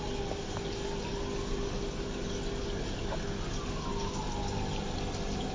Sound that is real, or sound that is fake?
real